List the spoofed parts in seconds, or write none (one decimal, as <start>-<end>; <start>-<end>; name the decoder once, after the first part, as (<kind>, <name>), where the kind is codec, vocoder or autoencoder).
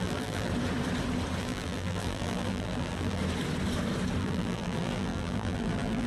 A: 0.0-0.5 (vocoder, BigVGAN v2); 1.4-3.2; 4.2-6.1